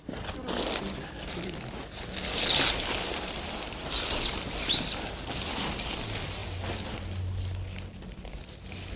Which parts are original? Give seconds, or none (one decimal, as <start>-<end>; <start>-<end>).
0.0-9.0